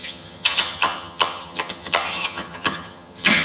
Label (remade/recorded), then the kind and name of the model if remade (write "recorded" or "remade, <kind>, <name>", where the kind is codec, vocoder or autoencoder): remade, vocoder, HiFi-GAN